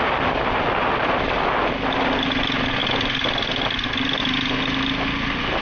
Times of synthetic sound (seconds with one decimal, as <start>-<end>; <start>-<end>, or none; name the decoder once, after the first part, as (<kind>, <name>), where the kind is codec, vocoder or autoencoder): none

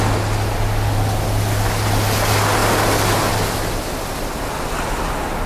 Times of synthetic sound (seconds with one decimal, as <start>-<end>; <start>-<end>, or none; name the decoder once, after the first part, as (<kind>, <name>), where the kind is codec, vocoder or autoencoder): none

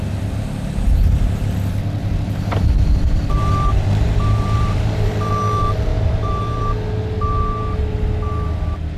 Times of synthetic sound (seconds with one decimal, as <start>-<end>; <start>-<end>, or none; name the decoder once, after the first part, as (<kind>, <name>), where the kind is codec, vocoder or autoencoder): 2.0-5.3 (vocoder, BigVGAN v2); 5.9-6.6

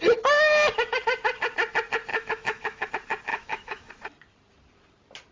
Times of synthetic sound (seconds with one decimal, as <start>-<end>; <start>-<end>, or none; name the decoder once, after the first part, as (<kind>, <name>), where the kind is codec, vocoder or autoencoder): 2.1-2.9 (autoencoder, DAC-VAE); 3.3-3.9

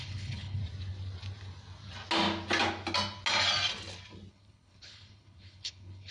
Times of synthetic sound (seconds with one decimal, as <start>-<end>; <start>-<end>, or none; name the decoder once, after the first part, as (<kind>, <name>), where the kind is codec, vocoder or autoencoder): 0.0-0.6 (codec, HILCodec); 4.3-6.1

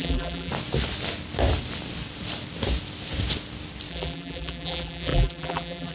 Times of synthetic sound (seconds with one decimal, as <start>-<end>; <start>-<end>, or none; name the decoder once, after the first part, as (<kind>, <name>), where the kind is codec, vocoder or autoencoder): 0.0-0.5 (vocoder, BigVGAN v2); 3.9-5.9